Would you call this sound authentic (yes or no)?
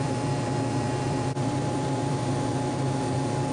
no